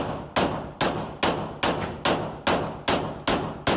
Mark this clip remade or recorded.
recorded